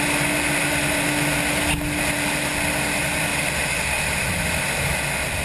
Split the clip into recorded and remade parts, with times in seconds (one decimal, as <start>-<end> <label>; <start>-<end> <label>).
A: 0.0-5.4 recorded